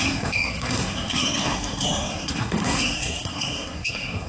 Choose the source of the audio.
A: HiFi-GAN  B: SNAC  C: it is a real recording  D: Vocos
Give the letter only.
B